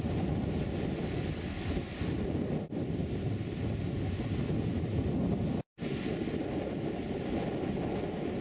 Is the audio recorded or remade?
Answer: recorded